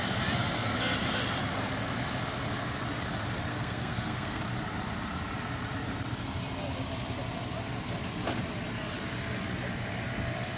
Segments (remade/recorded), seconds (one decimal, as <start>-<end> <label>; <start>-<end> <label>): 0.0-3.5 recorded; 3.5-4.4 remade; 4.4-10.6 recorded